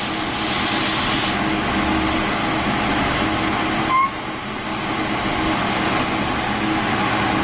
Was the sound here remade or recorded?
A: recorded